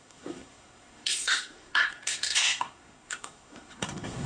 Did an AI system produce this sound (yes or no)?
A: yes